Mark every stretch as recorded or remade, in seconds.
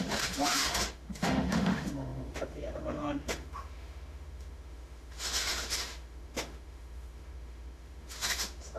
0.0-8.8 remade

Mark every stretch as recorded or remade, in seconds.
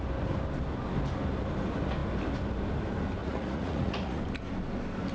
0.0-3.2 recorded; 3.2-4.2 remade; 4.2-5.1 recorded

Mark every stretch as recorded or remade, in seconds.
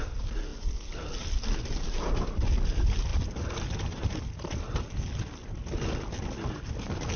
0.0-7.2 recorded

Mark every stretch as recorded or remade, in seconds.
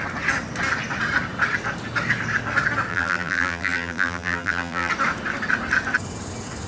0.0-2.9 recorded; 2.9-4.9 remade; 4.9-6.7 recorded